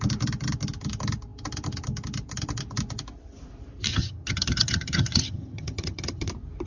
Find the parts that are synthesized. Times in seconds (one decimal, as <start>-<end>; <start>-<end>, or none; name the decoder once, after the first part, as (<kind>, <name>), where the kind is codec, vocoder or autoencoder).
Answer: 3.9-6.3 (vocoder, HiFi-GAN)